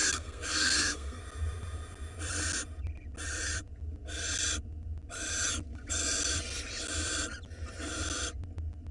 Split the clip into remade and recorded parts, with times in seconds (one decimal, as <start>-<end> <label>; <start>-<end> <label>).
0.0-1.2 remade; 1.2-8.9 recorded